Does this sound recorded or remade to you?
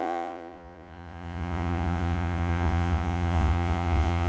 remade